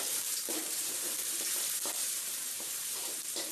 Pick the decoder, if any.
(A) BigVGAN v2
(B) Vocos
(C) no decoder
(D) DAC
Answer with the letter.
A